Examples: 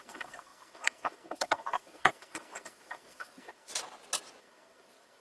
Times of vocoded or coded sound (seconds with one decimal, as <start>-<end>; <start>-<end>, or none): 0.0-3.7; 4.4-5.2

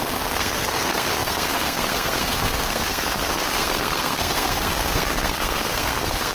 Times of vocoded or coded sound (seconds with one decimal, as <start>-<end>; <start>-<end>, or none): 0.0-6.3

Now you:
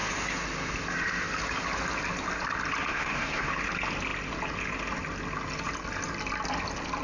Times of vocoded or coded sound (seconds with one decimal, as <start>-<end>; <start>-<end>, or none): 2.9-3.5

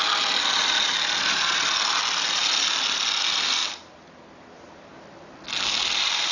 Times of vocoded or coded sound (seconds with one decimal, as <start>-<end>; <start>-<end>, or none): none